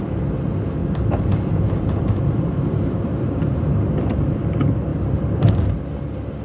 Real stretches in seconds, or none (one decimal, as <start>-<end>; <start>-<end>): 0.0-0.8; 4.3-4.9; 5.5-6.4